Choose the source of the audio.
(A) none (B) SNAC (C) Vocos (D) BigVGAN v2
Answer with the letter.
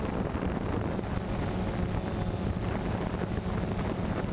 A